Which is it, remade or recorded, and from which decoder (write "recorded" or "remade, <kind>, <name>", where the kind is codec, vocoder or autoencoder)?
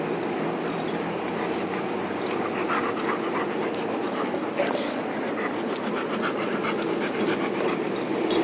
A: recorded